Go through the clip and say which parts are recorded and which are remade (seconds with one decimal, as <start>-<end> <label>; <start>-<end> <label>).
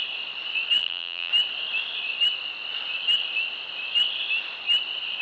0.0-0.8 recorded; 0.8-1.3 remade; 1.3-5.2 recorded